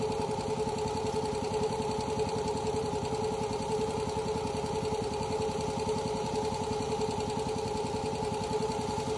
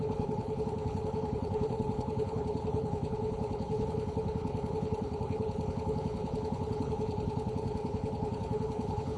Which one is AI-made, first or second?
second